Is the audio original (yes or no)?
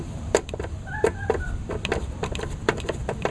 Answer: no